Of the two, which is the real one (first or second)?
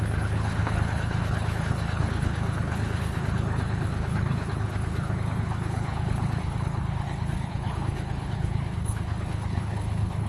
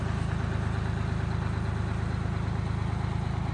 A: second